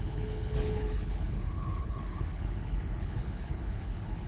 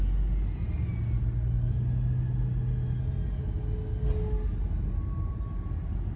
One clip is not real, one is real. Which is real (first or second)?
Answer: second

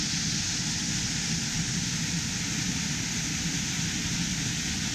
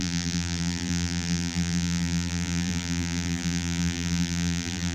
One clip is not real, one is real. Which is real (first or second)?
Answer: first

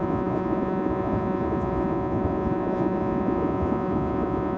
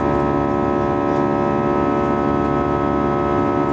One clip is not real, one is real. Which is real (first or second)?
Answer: second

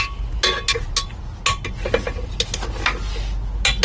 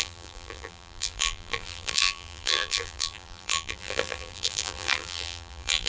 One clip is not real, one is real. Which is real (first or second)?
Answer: first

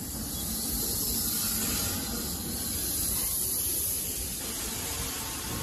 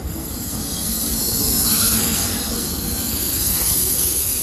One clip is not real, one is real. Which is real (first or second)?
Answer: first